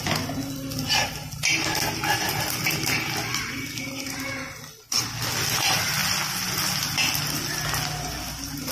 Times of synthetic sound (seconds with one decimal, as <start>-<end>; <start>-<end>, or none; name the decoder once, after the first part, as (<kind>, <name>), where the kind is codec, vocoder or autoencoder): none